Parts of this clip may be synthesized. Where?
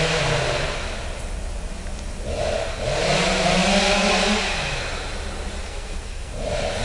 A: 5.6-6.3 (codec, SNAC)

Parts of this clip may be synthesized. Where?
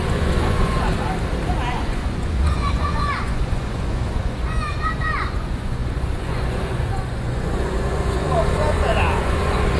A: 0.0-0.9 (vocoder, Vocos); 1.7-9.8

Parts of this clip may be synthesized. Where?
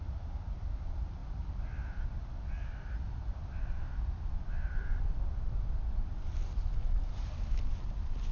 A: none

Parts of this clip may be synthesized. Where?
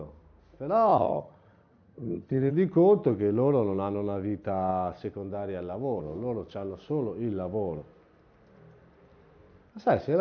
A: 0.9-2.5 (vocoder, HiFi-GAN)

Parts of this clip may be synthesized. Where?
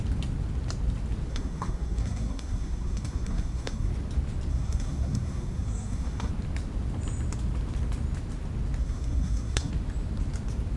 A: 1.3-3.9 (codec, SNAC); 4.5-6.3; 8.8-9.7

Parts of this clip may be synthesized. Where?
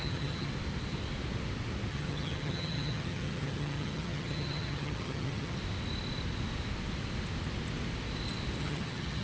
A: 0.0-0.5 (vocoder, HiFi-GAN); 1.9-5.6; 8.6-9.2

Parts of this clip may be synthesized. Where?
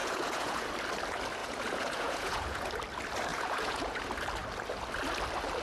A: 0.0-0.7 (vocoder, Vocos); 1.4-2.7; 3.3-4.0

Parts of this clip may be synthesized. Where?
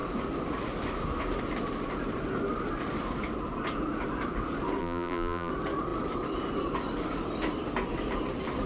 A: 4.8-5.5 (vocoder, BigVGAN v2)